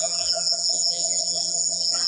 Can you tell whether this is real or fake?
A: fake